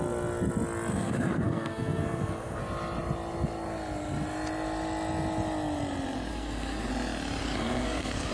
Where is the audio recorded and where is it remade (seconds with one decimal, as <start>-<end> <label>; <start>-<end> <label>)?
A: 0.0-0.9 recorded; 0.9-2.6 remade; 2.6-6.3 recorded; 6.3-6.9 remade; 6.9-7.4 recorded; 7.4-8.3 remade